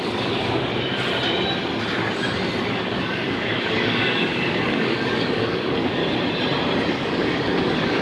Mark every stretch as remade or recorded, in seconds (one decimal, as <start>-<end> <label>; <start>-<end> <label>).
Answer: 0.0-0.7 remade; 0.7-2.7 recorded; 2.7-6.0 remade; 6.0-6.9 recorded; 6.9-8.0 remade